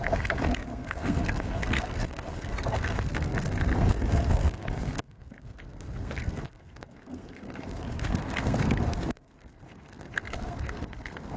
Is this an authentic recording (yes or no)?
no